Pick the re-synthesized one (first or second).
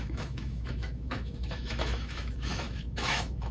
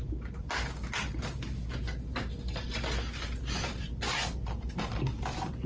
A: first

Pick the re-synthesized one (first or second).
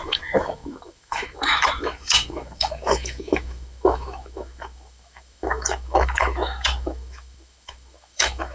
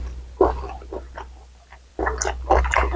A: first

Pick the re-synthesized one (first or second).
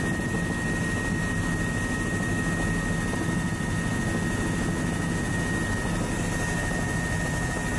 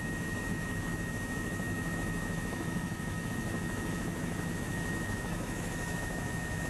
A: second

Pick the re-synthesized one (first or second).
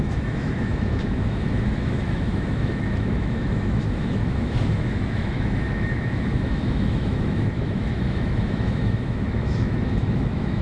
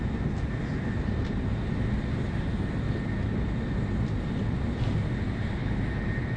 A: first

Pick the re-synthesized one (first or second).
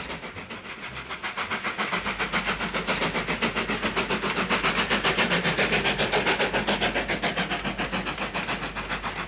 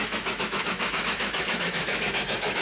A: second